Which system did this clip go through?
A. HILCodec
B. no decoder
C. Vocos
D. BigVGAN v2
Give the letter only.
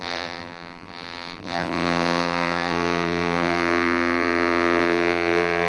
D